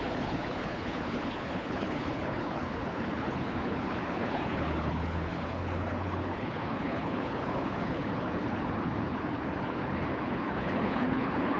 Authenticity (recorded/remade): remade